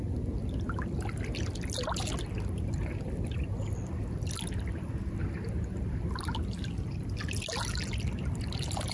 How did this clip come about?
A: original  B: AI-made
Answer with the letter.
A